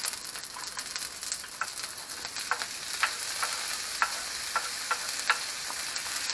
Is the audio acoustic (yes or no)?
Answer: yes